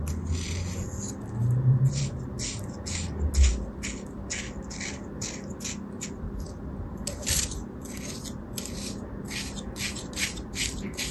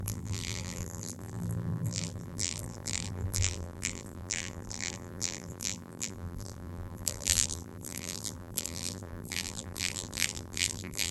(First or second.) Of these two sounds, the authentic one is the first